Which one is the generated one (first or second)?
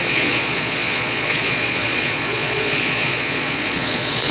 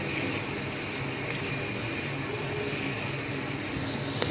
first